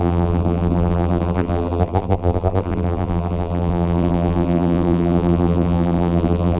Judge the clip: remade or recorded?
remade